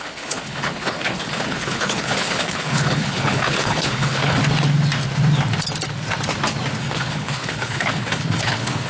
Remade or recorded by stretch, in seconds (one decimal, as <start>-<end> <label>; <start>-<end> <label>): 0.0-4.4 remade; 4.4-6.8 recorded; 6.8-8.9 remade